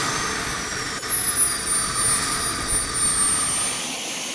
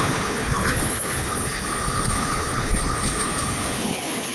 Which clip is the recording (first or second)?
first